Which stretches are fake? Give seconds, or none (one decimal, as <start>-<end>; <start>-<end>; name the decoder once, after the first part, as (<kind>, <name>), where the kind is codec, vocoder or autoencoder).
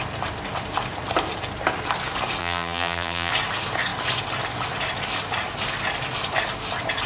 2.4-3.3 (vocoder, BigVGAN v2)